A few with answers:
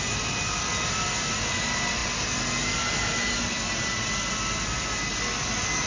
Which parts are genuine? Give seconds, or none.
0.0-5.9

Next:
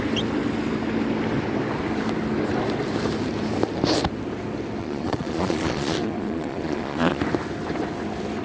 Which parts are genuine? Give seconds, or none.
0.0-4.8; 7.2-8.4

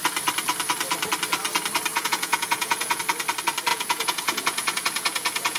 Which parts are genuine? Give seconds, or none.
0.0-1.9; 3.0-3.7

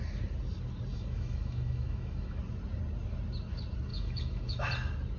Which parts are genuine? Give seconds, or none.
0.0-0.9; 2.4-3.9; 4.7-5.2

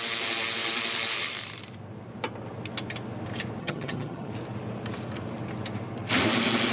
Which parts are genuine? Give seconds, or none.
0.0-3.6; 4.3-6.7